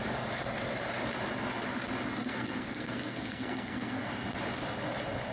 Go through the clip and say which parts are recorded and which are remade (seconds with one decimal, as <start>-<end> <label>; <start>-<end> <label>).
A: 0.0-2.2 recorded; 2.2-4.1 remade; 4.1-5.3 recorded